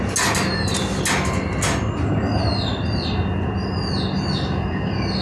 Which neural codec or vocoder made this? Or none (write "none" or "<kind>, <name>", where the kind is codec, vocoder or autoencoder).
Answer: none